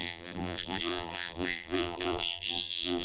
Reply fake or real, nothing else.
fake